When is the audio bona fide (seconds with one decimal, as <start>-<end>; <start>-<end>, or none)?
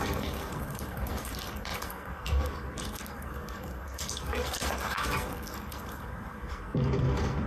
none